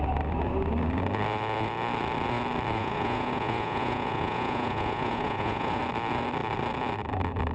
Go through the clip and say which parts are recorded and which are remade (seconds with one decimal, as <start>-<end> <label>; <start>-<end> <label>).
0.0-2.8 recorded; 2.8-5.8 remade; 5.8-7.5 recorded